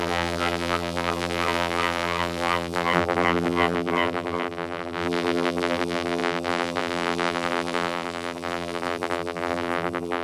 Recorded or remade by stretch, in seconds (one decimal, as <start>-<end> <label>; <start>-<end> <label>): 0.0-10.2 remade